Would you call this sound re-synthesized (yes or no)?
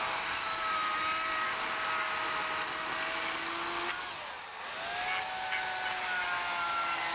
no